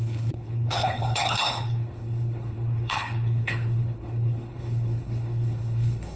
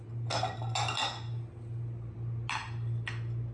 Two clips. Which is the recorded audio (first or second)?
second